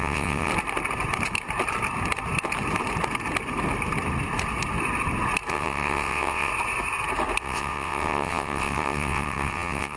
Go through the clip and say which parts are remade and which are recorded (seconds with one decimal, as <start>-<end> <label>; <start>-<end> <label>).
0.0-0.5 remade; 0.5-5.5 recorded; 5.5-6.5 remade; 6.5-7.4 recorded; 7.4-10.0 remade